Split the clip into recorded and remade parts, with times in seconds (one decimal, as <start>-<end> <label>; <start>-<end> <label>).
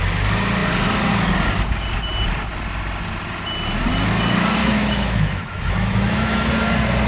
0.0-4.6 recorded; 4.6-6.5 remade; 6.5-7.1 recorded